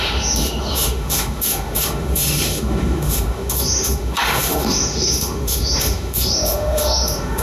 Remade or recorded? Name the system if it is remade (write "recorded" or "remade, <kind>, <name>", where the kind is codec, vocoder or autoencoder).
remade, autoencoder, DAC-VAE